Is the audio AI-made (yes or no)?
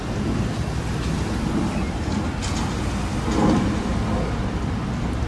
no